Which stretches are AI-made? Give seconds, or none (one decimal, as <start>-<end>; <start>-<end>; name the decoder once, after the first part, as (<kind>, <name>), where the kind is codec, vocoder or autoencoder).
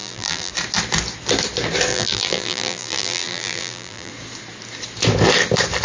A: 0.0-0.5 (vocoder, BigVGAN v2); 1.9-4.1